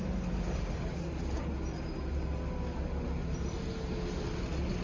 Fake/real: real